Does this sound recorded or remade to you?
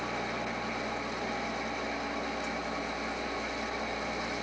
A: recorded